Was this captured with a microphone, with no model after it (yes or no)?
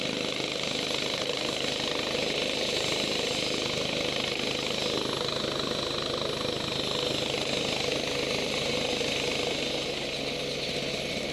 yes